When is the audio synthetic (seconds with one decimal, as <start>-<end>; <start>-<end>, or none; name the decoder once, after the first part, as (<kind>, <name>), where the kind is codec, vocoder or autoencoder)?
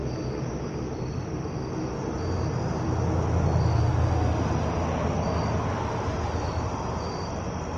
none